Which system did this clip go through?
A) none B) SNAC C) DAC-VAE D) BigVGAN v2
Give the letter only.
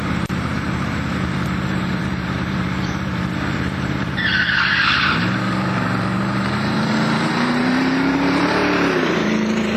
D